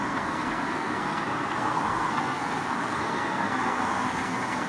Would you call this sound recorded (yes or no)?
no